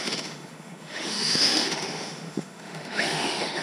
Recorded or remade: remade